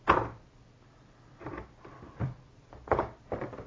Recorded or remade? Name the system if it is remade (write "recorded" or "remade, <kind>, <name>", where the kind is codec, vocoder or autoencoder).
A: recorded